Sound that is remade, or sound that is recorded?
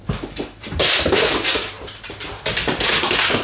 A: remade